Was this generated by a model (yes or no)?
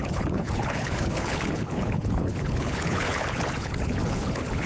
yes